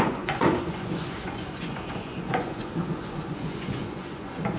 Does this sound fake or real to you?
fake